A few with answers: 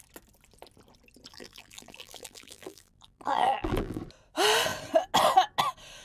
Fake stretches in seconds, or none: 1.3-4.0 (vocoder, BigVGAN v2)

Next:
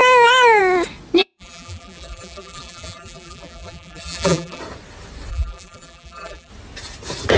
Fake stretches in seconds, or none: 1.2-4.6 (vocoder, BigVGAN v2); 5.3-6.5

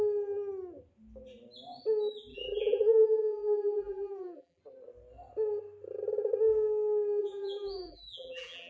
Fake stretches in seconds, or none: 2.3-4.6 (vocoder, BigVGAN v2); 7.2-8.7

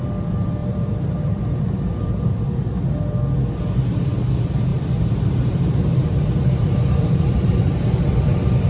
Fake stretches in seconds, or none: 0.6-3.0 (vocoder, BigVGAN v2); 4.7-8.7